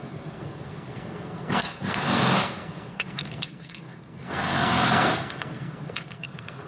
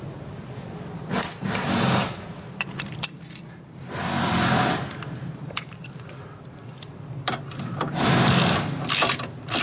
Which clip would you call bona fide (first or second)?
second